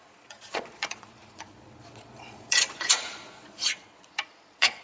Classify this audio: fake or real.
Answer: fake